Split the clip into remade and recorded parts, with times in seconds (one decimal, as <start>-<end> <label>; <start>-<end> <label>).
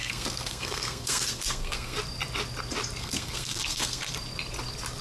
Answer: 0.0-2.0 remade; 2.0-3.0 recorded; 3.0-4.1 remade; 4.1-5.0 recorded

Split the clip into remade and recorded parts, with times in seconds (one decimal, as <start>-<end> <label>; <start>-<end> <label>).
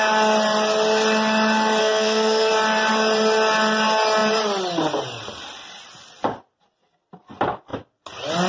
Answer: 0.0-1.8 recorded; 1.8-2.5 remade; 2.5-8.5 recorded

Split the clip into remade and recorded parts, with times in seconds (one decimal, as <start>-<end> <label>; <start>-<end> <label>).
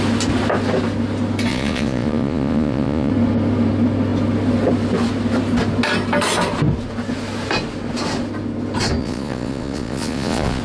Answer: 0.0-1.5 recorded; 1.5-3.1 remade; 3.1-9.0 recorded; 9.0-10.6 remade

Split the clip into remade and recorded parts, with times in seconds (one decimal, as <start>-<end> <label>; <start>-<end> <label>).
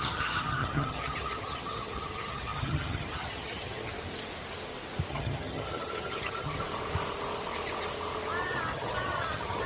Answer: 0.0-3.9 remade; 3.9-5.1 recorded; 5.1-6.6 remade; 6.6-8.4 recorded; 8.4-9.7 remade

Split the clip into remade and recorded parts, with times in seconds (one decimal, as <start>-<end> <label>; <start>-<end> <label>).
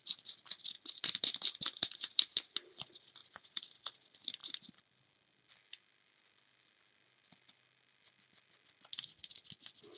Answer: 0.0-10.0 recorded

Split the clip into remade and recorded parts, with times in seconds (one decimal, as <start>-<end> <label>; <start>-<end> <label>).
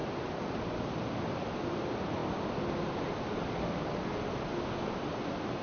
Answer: 0.0-1.7 remade; 1.7-5.6 recorded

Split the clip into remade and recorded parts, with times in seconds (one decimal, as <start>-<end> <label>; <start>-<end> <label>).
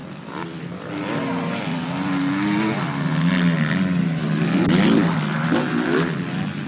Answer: 0.0-6.7 recorded